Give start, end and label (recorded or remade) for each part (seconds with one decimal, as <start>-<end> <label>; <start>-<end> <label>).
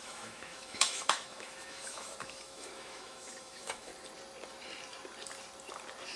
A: 0.0-3.9 remade; 3.9-6.2 recorded